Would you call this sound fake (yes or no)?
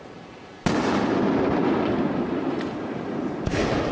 no